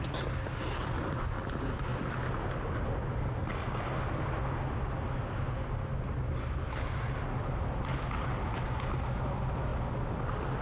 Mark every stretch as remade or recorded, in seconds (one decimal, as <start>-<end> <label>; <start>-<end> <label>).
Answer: 0.0-10.6 recorded

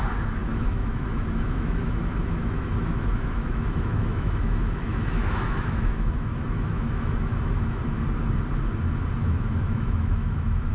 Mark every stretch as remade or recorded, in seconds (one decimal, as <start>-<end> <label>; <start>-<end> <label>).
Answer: 0.0-7.8 remade; 7.8-9.2 recorded; 9.2-10.7 remade

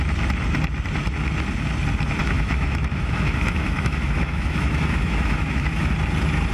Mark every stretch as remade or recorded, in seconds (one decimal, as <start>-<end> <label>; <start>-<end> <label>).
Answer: 0.0-2.2 recorded; 2.2-5.9 remade; 5.9-6.5 recorded

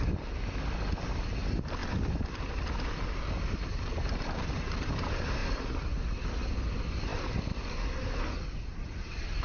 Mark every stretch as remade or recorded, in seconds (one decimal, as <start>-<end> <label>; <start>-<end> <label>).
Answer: 0.0-9.4 recorded

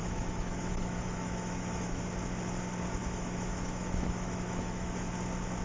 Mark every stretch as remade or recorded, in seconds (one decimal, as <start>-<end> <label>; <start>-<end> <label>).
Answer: 0.0-2.0 remade; 2.0-3.0 recorded; 3.0-5.1 remade; 5.1-5.6 recorded

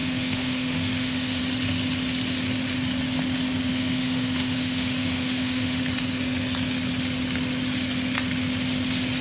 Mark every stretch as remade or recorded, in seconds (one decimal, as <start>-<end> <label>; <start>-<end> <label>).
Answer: 0.0-1.4 remade; 1.4-3.7 recorded; 3.7-5.8 remade; 5.8-9.2 recorded

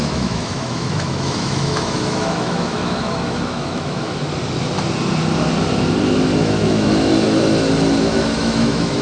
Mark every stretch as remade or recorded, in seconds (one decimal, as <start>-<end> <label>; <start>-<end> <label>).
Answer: 0.0-4.2 remade; 4.2-6.4 recorded; 6.4-7.1 remade; 7.1-8.0 recorded; 8.0-9.0 remade

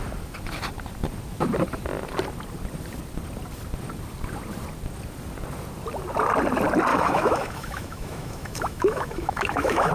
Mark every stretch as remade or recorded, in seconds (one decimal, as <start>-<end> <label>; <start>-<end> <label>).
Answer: 0.0-6.9 recorded; 6.9-9.9 remade